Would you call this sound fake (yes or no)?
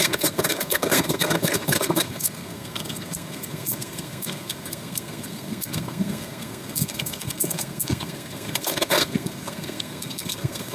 yes